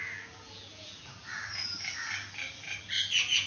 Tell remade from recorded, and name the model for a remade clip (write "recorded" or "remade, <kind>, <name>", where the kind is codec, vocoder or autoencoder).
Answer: remade, vocoder, BigVGAN v2